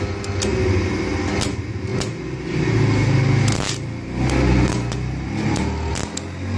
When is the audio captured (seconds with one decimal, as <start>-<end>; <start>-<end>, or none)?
0.0-6.6